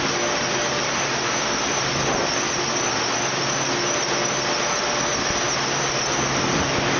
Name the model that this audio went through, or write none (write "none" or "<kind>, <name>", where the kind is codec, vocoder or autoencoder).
none